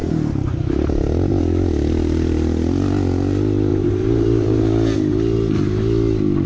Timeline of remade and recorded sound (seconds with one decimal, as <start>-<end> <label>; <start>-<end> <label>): 0.0-3.7 recorded; 3.7-4.6 remade; 4.6-6.5 recorded